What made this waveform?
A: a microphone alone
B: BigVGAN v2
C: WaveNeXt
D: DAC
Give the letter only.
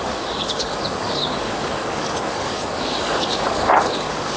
D